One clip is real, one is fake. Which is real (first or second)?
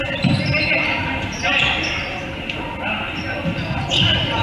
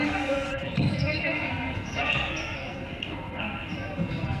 first